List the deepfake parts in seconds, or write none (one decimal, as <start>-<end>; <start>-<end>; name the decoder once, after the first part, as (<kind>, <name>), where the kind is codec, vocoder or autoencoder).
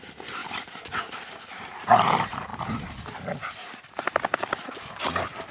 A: 0.0-2.5 (vocoder, BigVGAN v2); 3.8-5.5